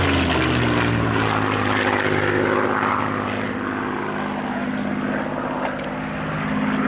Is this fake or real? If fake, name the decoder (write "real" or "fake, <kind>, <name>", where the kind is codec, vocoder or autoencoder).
real